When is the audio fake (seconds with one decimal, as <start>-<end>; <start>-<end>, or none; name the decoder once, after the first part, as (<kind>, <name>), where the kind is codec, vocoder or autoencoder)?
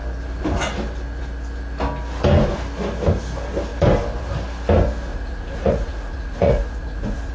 5.1-7.3 (vocoder, Vocos)